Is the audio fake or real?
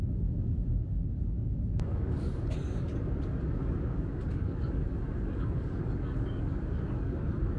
fake